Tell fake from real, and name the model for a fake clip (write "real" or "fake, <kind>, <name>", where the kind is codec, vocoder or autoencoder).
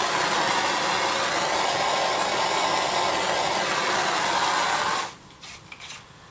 real